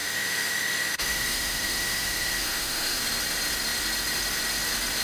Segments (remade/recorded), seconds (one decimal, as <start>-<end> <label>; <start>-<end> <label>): 0.0-3.0 remade; 3.0-5.0 recorded